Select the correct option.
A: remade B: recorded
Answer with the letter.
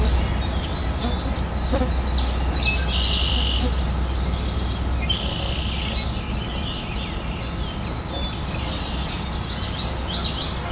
B